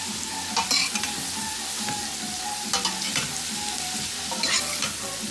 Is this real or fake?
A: real